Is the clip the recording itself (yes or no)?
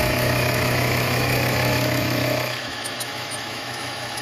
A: no